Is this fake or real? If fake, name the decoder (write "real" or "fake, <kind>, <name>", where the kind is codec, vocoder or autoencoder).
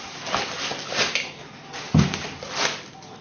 real